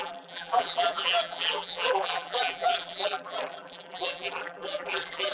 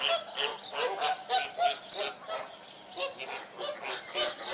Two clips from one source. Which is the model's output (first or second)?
first